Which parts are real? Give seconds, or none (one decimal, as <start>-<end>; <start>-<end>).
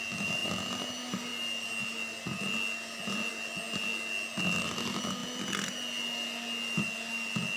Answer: 0.0-7.6